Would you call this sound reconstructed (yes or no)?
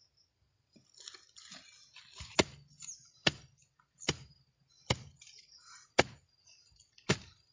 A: no